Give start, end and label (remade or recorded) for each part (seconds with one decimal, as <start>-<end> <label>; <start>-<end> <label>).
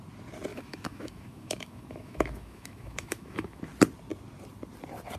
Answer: 0.0-0.5 recorded; 0.5-3.6 remade; 3.6-5.2 recorded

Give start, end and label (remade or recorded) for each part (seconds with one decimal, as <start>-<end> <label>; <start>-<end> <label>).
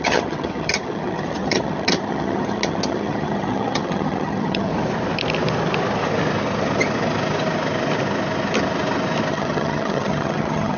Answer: 0.0-4.7 remade; 4.7-9.3 recorded; 9.3-10.8 remade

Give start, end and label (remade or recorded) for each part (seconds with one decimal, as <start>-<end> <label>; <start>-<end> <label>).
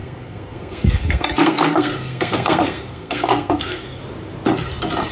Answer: 0.0-4.0 remade; 4.0-5.1 recorded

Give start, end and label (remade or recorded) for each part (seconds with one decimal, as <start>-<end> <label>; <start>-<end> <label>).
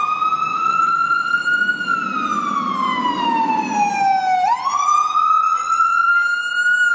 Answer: 0.0-0.5 recorded; 0.5-1.4 remade; 1.4-4.7 recorded; 4.7-6.1 remade; 6.1-6.9 recorded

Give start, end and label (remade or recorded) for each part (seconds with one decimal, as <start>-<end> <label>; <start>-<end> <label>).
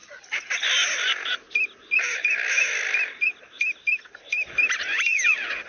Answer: 0.0-5.7 recorded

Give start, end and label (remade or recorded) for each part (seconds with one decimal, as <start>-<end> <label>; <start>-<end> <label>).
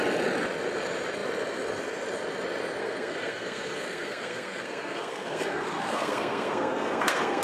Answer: 0.0-2.8 recorded; 2.8-7.4 remade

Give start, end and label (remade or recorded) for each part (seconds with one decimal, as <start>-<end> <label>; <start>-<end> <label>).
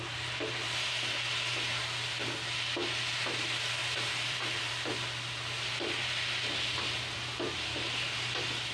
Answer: 0.0-3.8 recorded; 3.8-4.7 remade; 4.7-8.7 recorded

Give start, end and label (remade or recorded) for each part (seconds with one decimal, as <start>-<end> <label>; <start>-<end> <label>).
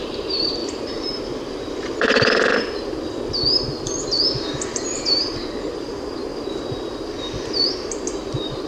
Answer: 0.0-0.6 remade; 0.6-4.2 recorded; 4.2-6.2 remade; 6.2-7.7 recorded; 7.7-8.7 remade